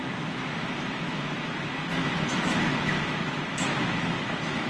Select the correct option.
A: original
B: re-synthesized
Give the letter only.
B